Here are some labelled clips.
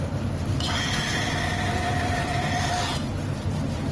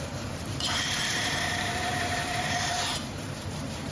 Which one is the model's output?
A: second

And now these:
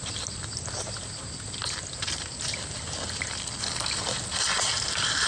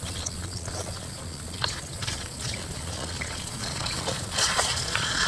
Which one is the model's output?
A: second